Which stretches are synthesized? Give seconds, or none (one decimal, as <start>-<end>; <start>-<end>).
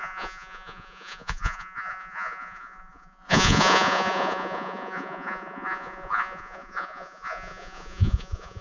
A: 0.0-8.6